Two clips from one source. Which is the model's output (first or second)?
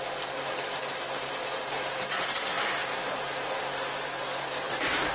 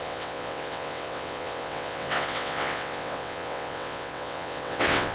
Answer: second